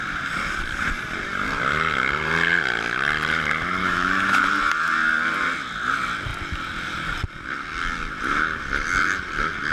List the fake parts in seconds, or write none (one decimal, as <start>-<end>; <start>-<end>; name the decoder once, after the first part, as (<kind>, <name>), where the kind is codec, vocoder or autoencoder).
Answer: 3.8-4.4 (autoencoder, DAC-VAE)